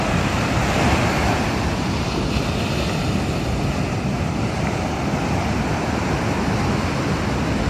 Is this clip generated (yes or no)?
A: no